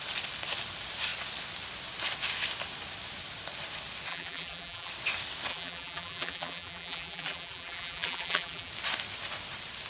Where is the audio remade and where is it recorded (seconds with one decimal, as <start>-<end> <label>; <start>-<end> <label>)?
0.0-4.1 recorded; 4.1-4.9 remade; 4.9-5.5 recorded; 5.5-8.7 remade; 8.7-9.9 recorded